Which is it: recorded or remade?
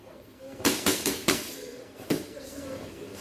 remade